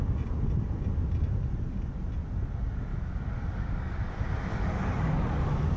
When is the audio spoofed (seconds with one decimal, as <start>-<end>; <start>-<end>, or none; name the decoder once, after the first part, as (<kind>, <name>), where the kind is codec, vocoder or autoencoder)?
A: 2.9-4.1 (codec, DAC); 4.5-5.8